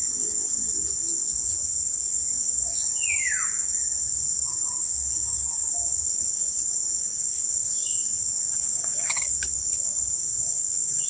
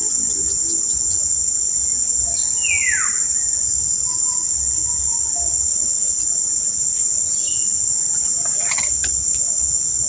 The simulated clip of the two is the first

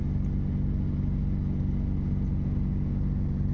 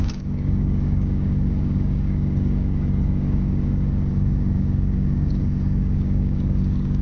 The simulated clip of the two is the second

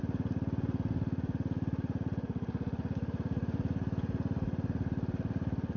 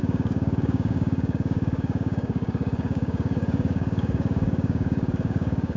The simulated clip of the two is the second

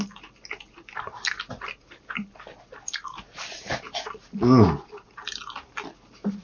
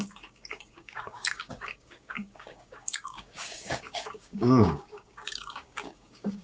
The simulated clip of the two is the second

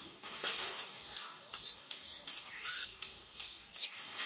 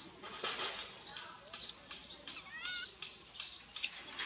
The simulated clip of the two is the first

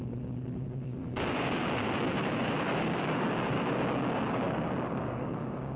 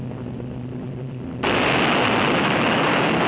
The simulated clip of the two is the first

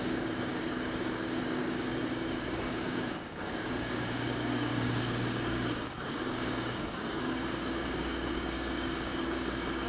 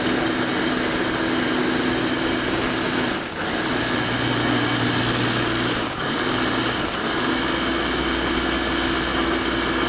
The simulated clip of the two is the first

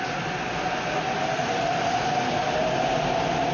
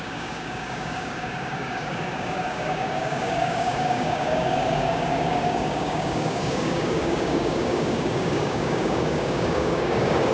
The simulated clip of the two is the second